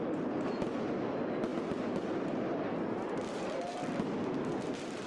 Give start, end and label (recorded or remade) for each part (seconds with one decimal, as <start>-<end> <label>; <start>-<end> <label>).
0.0-5.1 recorded